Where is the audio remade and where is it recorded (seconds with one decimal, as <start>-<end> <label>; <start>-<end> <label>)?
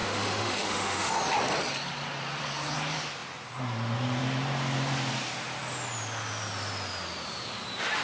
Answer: 0.0-1.1 remade; 1.1-8.0 recorded